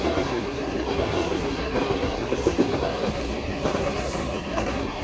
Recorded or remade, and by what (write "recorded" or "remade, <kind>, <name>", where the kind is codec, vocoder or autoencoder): remade, codec, SNAC